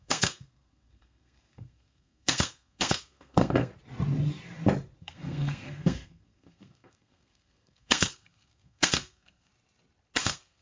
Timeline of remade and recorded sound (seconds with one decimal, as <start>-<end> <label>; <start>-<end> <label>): 0.0-3.7 remade; 3.7-5.0 recorded; 5.0-9.5 remade; 9.5-10.2 recorded; 10.2-10.6 remade